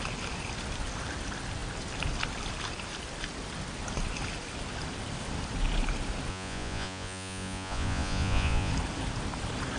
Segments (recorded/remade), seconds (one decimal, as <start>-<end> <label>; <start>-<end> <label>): 0.0-6.3 recorded; 6.3-8.7 remade; 8.7-9.8 recorded